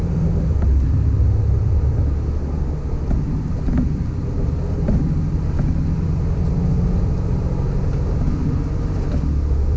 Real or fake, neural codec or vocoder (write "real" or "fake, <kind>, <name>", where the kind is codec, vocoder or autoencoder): real